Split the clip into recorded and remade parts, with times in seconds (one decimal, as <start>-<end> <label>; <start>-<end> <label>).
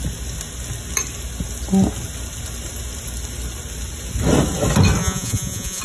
0.0-5.0 recorded; 5.0-5.8 remade